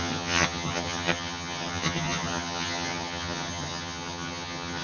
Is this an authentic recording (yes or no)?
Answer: no